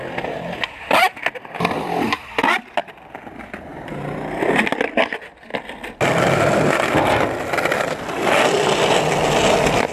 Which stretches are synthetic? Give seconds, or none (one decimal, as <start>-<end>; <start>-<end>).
3.7-4.4